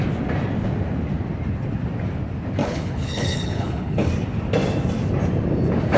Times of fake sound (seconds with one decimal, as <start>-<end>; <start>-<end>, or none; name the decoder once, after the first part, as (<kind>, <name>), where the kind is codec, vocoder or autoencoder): 2.6-4.1 (codec, HILCodec)